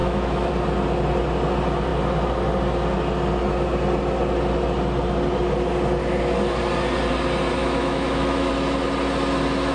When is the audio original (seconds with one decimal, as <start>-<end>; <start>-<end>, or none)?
0.5-7.6; 8.5-9.7